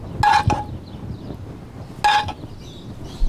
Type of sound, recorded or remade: recorded